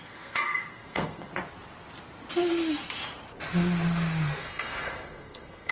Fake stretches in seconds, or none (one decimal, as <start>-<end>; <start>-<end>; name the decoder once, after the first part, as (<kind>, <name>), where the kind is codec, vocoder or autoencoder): 0.0-1.3 (codec, SNAC); 4.4-5.7

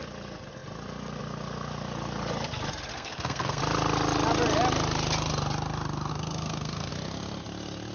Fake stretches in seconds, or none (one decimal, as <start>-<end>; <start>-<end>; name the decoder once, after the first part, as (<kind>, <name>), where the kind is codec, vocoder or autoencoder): 2.9-3.6 (codec, SNAC); 6.1-6.9

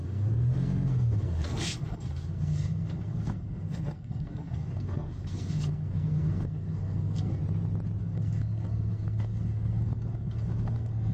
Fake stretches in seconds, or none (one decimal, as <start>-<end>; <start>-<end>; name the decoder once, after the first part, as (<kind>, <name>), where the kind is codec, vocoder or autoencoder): 0.0-7.4 (codec, SNAC); 8.0-11.1

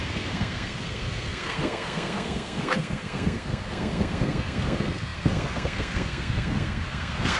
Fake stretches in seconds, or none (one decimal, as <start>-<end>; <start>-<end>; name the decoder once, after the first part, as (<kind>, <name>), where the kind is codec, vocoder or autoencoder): 0.0-7.4 (codec, SNAC)

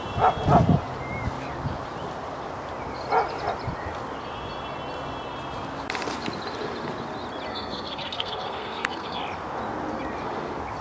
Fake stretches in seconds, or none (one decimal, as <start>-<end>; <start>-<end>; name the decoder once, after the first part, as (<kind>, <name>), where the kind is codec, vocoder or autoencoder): 7.5-9.2 (codec, SNAC)

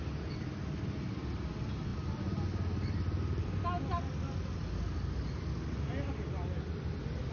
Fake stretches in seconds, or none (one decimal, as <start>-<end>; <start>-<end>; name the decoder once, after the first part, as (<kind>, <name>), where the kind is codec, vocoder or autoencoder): none

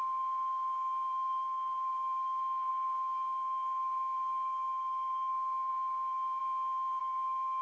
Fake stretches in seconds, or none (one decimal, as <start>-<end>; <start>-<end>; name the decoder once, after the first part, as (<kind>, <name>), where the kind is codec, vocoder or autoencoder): 0.0-6.4 (codec, SNAC); 7.0-7.6